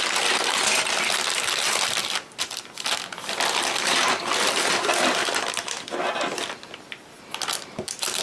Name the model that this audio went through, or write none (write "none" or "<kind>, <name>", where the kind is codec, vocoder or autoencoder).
none